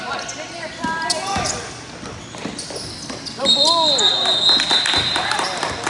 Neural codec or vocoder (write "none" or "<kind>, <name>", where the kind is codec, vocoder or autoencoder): none